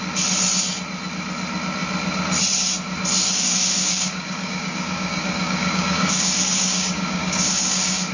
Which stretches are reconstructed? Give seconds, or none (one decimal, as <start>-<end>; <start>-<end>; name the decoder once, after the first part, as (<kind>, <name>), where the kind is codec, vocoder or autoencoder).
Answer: 3.2-8.1 (codec, DAC)

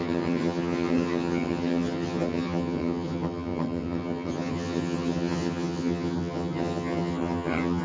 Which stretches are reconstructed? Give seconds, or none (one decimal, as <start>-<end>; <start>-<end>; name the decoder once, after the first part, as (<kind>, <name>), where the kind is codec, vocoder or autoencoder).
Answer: 0.0-7.8 (vocoder, HiFi-GAN)